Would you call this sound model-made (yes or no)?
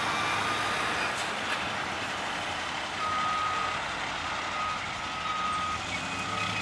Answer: no